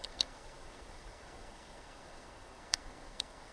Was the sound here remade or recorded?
remade